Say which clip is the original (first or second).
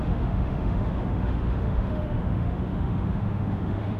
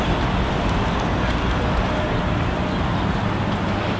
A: second